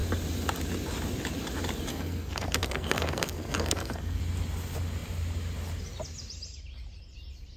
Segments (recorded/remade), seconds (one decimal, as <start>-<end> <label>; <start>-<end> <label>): 0.0-1.9 recorded; 1.9-4.2 remade; 4.2-7.6 recorded